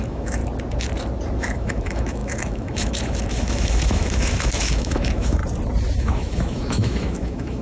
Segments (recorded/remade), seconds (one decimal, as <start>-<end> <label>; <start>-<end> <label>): 0.0-0.4 remade; 0.4-1.4 recorded; 1.4-5.4 remade; 5.4-6.0 recorded; 6.0-7.6 remade